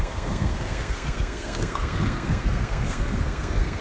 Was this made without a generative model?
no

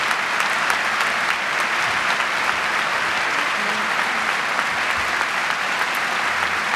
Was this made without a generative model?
yes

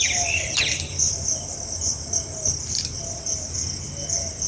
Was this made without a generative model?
no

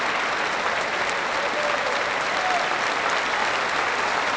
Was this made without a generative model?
yes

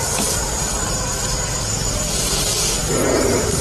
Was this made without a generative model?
yes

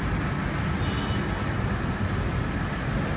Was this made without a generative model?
yes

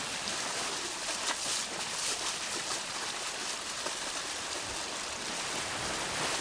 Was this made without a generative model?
yes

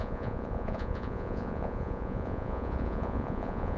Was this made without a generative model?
no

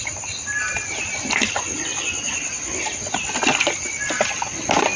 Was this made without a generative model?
yes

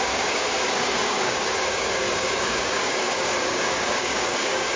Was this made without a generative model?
no